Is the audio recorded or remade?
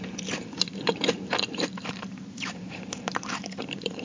remade